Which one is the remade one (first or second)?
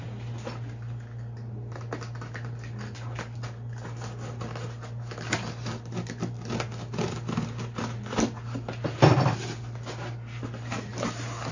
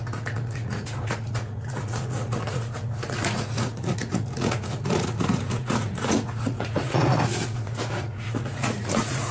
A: second